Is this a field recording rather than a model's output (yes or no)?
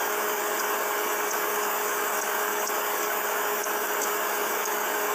no